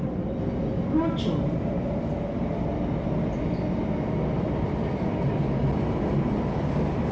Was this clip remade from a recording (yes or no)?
no